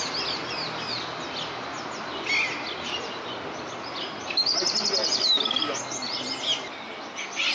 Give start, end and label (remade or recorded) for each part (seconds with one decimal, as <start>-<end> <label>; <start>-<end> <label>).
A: 0.0-7.5 recorded